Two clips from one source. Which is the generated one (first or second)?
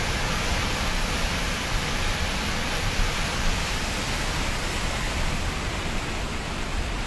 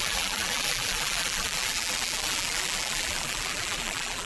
second